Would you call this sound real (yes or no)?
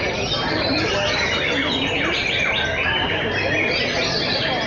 yes